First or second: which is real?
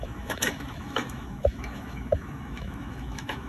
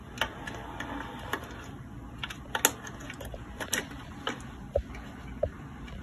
second